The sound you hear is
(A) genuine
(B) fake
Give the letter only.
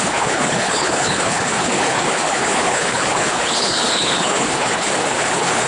B